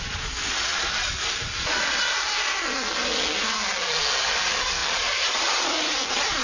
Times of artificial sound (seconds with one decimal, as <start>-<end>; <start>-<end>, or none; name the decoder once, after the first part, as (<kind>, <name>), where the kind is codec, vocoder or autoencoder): 0.0-0.7 (vocoder, BigVGAN v2); 4.2-6.4